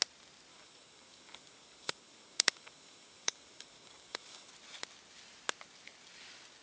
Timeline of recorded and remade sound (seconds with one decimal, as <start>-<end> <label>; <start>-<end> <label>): 0.0-0.5 recorded; 0.5-4.5 remade; 4.5-6.6 recorded